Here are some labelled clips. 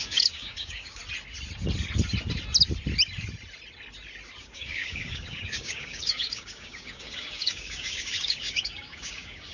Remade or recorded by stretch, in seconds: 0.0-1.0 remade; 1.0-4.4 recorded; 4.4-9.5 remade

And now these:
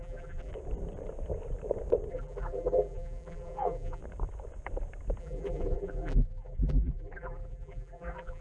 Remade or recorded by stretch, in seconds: 0.0-0.5 remade; 0.5-2.1 recorded; 2.1-4.0 remade; 4.0-5.2 recorded; 5.2-8.4 remade

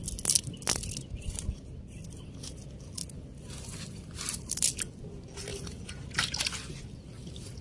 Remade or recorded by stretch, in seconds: 0.0-7.6 recorded

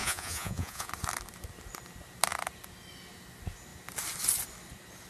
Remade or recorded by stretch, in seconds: 0.0-0.9 remade; 0.9-5.1 recorded